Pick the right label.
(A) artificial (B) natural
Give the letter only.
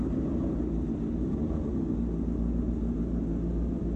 B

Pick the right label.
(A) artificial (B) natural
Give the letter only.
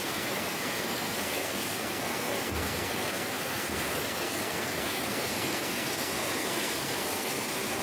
A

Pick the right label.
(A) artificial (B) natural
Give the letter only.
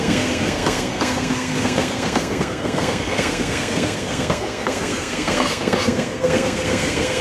A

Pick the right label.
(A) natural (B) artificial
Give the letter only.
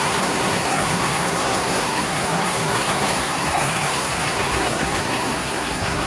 B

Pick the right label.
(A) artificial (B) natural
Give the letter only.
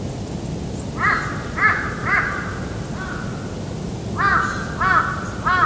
B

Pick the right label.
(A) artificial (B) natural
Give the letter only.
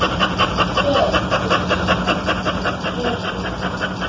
B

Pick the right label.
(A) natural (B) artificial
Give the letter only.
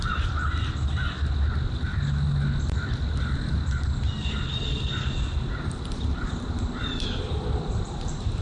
A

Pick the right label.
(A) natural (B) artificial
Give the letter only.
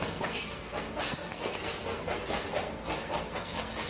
B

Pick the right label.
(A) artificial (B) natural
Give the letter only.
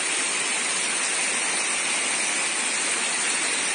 B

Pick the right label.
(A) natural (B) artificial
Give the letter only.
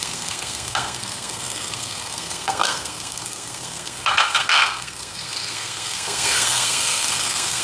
B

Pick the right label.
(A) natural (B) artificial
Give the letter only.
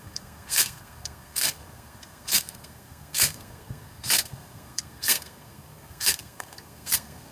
B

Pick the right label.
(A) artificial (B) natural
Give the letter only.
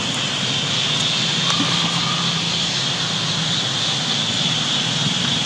B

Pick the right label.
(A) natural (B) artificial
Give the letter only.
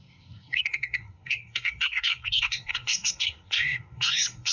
B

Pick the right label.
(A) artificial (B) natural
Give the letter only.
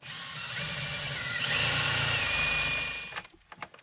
B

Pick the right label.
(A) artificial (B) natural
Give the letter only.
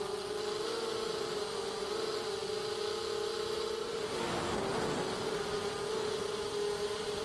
B